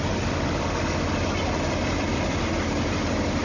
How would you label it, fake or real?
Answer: real